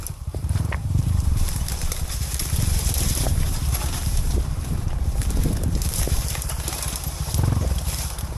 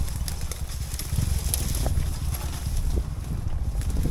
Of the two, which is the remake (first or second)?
first